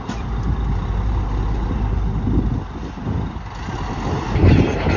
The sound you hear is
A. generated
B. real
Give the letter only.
B